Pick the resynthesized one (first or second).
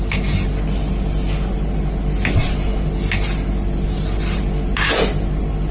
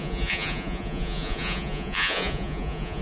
second